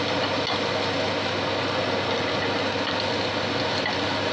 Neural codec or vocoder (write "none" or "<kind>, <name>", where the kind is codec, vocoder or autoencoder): none